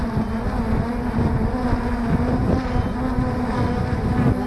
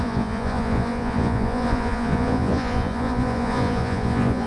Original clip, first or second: first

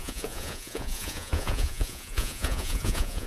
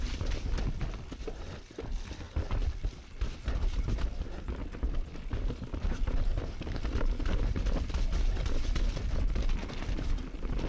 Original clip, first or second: second